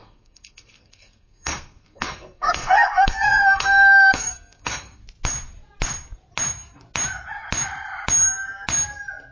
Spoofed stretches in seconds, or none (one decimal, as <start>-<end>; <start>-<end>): 0.0-5.0